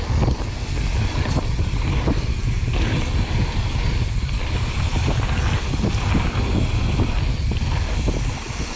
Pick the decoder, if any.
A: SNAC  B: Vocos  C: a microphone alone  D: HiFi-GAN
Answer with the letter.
C